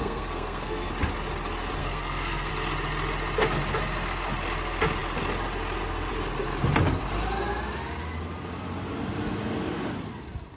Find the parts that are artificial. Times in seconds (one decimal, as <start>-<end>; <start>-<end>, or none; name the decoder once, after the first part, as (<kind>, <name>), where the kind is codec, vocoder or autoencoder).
0.0-0.9 (codec, SNAC); 1.8-2.5